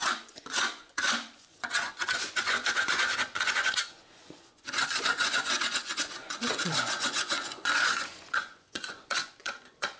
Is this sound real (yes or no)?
no